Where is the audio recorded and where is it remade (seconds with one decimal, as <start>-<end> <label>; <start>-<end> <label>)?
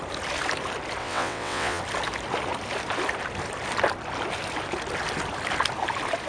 0.0-1.0 recorded; 1.0-1.8 remade; 1.8-6.3 recorded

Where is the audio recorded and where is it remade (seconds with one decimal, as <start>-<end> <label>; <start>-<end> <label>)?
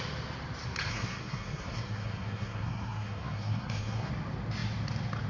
0.0-0.9 recorded; 0.9-4.1 remade; 4.1-5.3 recorded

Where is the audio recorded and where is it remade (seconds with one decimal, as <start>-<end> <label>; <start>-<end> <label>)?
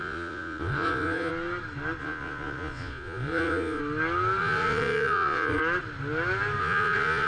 0.0-1.3 remade; 1.3-2.0 recorded; 2.0-3.8 remade; 3.8-4.4 recorded; 4.4-5.6 remade; 5.6-6.6 recorded; 6.6-7.3 remade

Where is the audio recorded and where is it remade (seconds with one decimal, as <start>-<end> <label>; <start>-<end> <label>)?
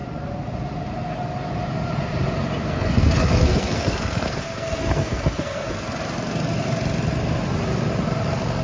0.0-2.6 recorded; 2.6-5.7 remade; 5.7-8.6 recorded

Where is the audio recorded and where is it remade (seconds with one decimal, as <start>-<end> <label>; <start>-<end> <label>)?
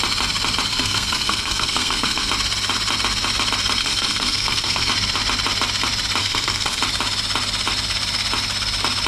0.0-0.7 recorded; 0.7-2.3 remade; 2.3-3.8 recorded; 3.8-4.9 remade; 4.9-6.2 recorded; 6.2-6.8 remade; 6.8-9.1 recorded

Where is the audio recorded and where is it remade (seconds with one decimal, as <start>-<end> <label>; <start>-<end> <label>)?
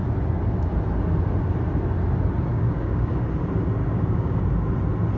0.0-2.5 recorded; 2.5-3.1 remade; 3.1-3.8 recorded; 3.8-4.4 remade; 4.4-5.2 recorded